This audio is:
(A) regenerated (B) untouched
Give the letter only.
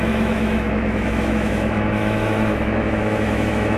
A